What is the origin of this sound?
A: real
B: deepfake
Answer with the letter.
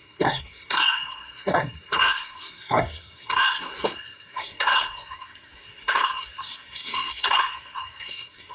B